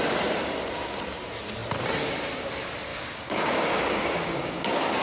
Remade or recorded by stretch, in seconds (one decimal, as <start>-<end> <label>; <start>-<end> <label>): 0.0-2.9 recorded; 2.9-5.0 remade